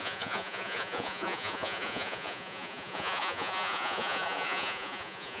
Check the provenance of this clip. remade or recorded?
remade